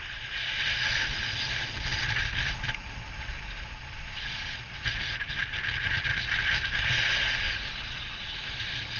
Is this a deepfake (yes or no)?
no